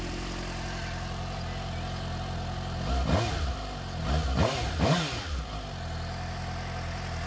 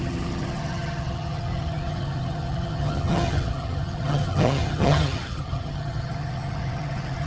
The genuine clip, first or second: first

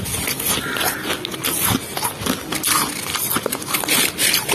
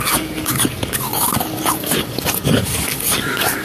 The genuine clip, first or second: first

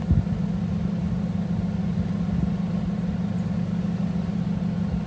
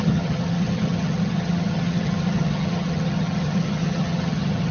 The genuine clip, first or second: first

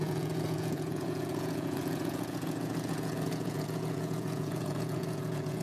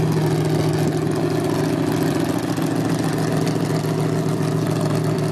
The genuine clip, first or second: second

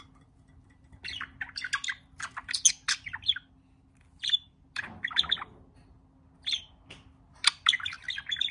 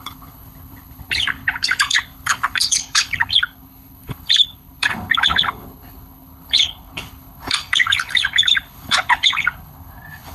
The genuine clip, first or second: first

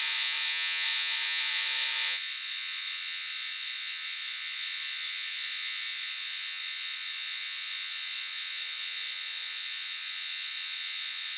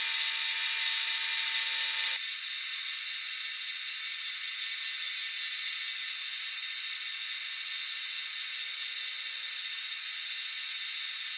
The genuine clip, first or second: second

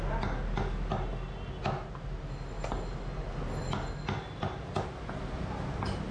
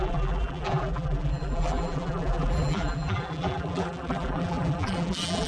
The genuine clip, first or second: first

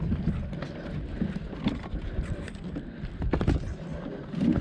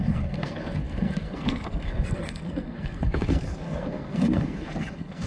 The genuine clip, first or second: first